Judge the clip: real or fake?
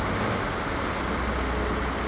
real